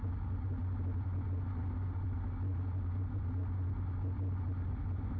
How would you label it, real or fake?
real